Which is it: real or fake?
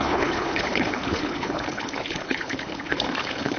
fake